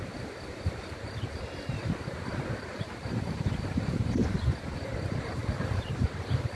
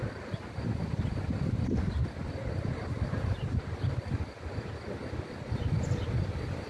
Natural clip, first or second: second